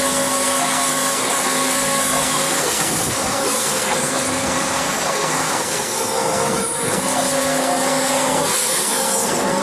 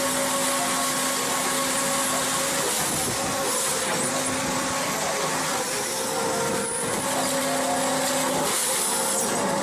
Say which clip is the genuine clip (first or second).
second